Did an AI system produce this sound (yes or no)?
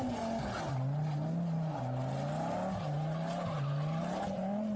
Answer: no